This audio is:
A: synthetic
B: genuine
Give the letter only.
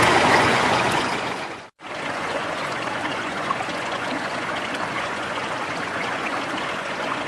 A